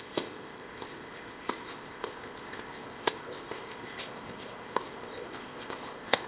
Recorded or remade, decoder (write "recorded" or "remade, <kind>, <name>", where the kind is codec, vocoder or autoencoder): remade, codec, ZipCodec